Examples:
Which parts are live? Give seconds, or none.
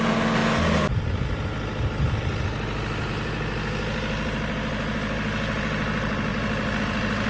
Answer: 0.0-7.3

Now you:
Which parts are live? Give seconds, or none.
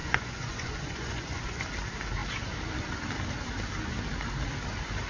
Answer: 1.6-5.1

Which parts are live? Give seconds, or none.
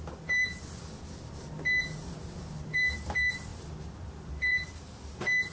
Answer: 0.5-2.7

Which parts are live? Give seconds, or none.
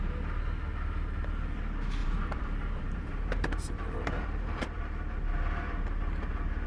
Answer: 0.0-2.0; 4.8-6.7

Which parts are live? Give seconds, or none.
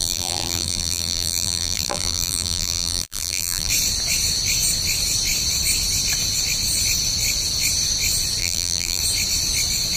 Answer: 3.7-8.4; 9.0-10.0